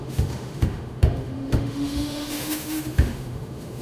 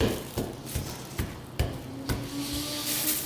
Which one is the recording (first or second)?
second